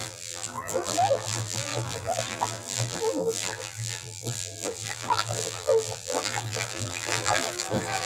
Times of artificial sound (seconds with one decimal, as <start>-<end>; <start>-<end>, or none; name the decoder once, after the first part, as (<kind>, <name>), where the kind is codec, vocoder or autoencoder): 0.0-8.1 (vocoder, BigVGAN v2)